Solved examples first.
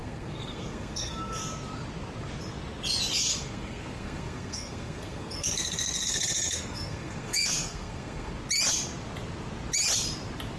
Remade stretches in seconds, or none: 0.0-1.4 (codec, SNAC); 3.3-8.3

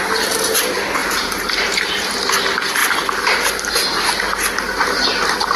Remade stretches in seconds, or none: 1.0-2.3 (vocoder, BigVGAN v2); 2.8-3.7